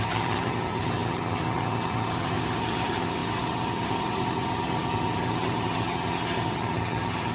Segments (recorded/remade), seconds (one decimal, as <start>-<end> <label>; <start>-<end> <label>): 0.0-7.3 remade